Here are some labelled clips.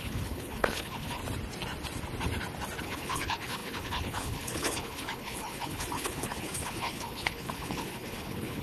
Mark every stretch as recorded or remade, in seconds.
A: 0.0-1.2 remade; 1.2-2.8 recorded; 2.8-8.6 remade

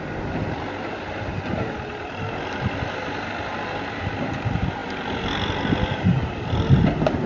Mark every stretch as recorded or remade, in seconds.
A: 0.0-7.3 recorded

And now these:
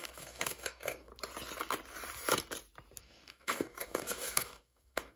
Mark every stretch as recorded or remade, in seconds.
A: 0.0-1.1 remade; 1.1-3.0 recorded; 3.0-5.2 remade